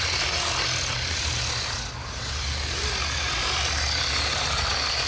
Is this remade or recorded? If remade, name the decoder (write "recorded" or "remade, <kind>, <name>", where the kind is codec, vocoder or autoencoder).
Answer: recorded